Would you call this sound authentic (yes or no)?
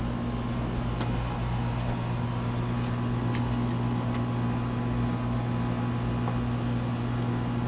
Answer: yes